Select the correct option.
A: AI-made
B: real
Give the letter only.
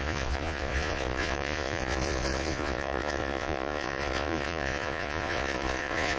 A